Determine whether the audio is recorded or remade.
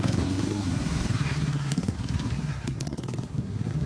remade